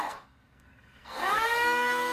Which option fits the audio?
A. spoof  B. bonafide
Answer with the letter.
A